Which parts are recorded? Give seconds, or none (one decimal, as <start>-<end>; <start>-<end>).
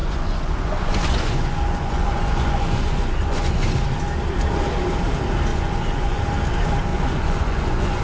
3.7-5.5; 6.2-6.9